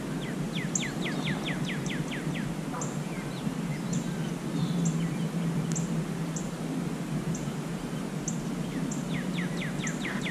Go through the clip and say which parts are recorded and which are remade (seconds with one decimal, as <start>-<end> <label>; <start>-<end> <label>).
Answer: 0.0-10.3 recorded